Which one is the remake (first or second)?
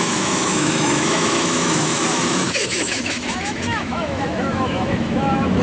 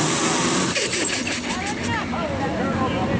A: first